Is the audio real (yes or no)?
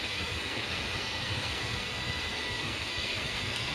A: no